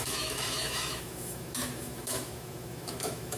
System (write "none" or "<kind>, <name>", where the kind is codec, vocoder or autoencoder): autoencoder, DAC-VAE